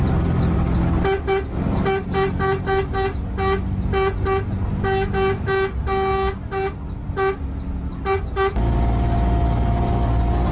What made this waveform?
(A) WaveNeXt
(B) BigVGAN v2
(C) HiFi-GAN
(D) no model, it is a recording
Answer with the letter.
D